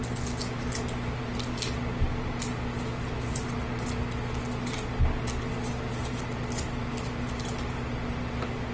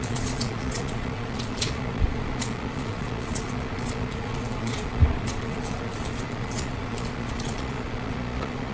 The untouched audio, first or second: first